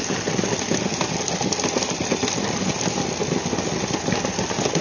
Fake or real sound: real